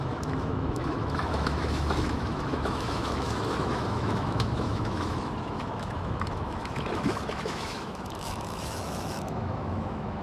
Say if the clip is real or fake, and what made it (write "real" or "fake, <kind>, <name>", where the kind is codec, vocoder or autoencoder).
fake, autoencoder, DAC-VAE